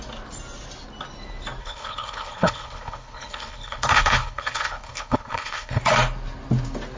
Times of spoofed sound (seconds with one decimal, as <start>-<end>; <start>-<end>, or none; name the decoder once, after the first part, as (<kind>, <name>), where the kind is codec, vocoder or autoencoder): 1.6-5.8 (codec, HILCodec)